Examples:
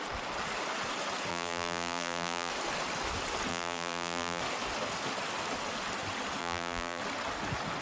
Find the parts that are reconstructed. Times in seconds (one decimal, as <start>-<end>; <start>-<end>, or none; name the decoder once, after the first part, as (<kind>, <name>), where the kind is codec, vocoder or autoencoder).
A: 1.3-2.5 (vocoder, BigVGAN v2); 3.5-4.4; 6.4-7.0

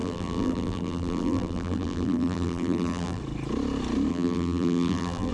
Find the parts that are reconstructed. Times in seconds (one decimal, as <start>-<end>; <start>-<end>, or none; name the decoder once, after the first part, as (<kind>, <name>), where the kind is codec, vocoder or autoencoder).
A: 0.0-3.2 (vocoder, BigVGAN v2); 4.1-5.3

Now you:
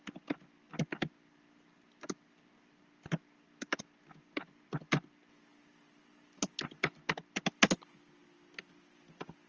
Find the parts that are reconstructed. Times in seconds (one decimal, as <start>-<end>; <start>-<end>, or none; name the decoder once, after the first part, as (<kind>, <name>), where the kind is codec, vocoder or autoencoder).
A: none

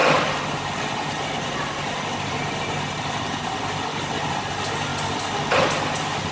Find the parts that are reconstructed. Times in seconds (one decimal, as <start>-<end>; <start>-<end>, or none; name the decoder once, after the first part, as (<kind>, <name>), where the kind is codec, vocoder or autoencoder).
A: none

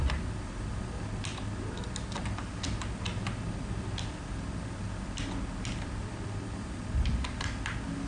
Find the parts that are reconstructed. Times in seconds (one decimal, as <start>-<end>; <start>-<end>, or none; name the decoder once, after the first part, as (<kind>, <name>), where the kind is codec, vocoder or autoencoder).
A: 6.0-6.8 (vocoder, BigVGAN v2)

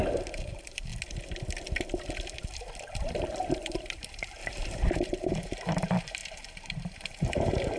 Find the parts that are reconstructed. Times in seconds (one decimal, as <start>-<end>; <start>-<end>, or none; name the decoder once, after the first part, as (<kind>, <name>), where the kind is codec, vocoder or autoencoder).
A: 0.0-0.9 (vocoder, BigVGAN v2); 3.1-7.8

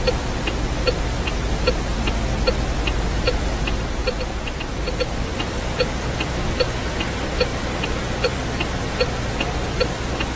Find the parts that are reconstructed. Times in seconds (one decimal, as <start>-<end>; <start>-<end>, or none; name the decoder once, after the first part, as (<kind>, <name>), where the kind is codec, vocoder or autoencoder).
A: 7.5-8.3 (vocoder, BigVGAN v2)